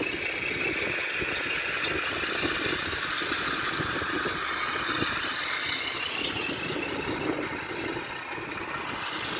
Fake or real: real